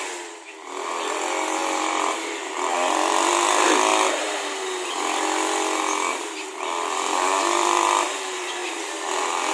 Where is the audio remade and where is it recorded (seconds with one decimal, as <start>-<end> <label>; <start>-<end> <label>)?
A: 0.0-3.9 remade; 3.9-6.1 recorded; 6.1-9.5 remade